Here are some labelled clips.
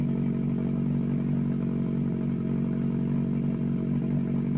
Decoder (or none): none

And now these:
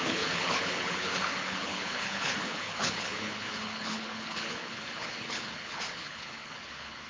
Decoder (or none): codec, HILCodec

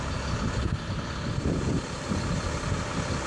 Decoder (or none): none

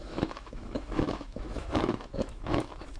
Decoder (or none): autoencoder, DAC-VAE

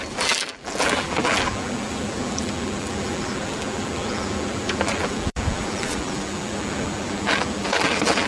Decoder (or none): vocoder, BigVGAN v2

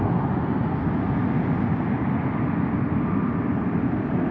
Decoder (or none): none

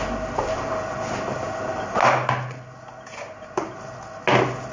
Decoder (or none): none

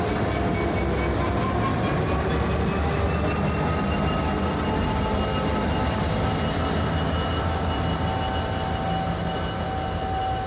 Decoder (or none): none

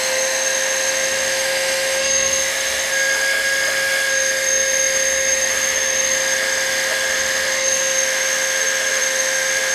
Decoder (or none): autoencoder, DAC-VAE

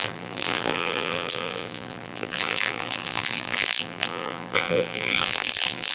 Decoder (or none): vocoder, BigVGAN v2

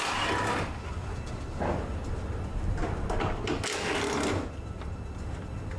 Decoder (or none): none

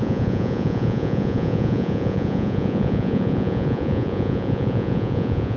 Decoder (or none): vocoder, Vocos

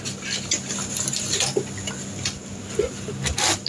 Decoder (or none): none